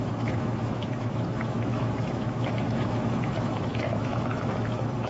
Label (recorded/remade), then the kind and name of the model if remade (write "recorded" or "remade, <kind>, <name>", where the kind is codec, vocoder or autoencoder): remade, autoencoder, DAC-VAE